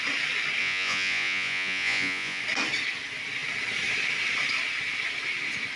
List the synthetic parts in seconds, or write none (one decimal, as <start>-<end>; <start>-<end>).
0.6-2.4